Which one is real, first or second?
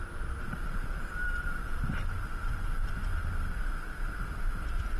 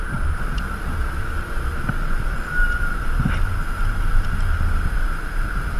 second